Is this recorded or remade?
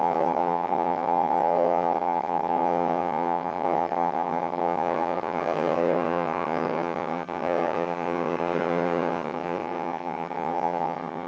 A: remade